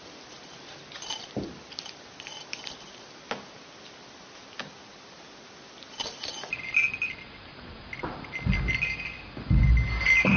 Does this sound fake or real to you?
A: real